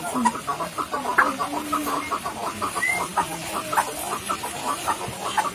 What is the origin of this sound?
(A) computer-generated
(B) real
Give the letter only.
B